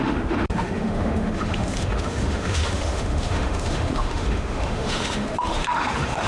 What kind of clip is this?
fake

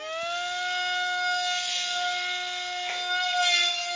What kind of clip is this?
real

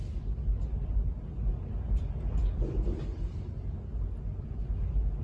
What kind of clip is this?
real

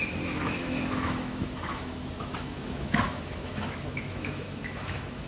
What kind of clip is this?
fake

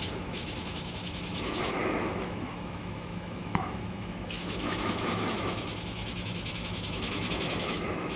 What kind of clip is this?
fake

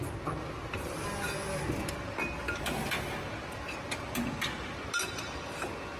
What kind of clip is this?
real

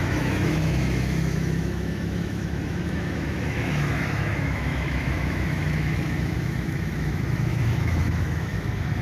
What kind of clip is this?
fake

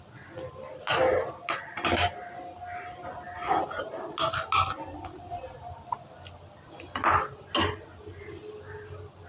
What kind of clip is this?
real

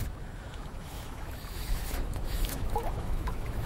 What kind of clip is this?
fake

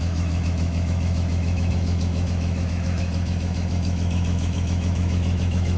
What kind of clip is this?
fake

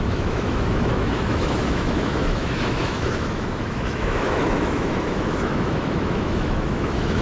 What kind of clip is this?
fake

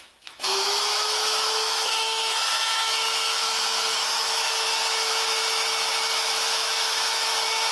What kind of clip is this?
fake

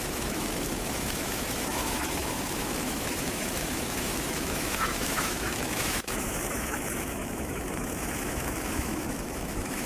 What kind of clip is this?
fake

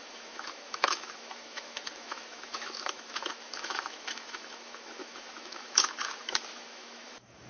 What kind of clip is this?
fake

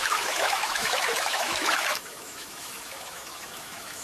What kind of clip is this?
fake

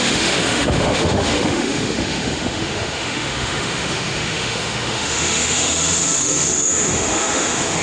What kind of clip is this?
fake